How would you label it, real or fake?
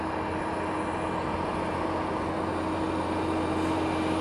real